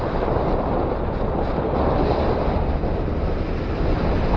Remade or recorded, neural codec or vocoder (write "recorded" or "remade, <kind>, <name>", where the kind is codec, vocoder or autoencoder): recorded